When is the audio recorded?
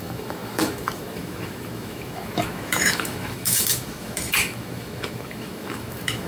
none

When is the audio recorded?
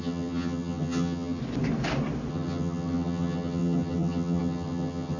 1.4-2.3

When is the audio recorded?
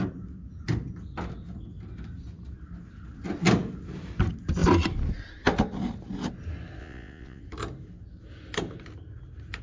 0.0-6.8; 7.4-9.6